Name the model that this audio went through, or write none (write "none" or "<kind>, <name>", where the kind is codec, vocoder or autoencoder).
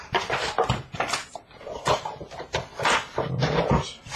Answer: vocoder, BigVGAN v2